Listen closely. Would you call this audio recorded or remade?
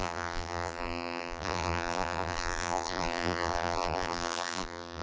remade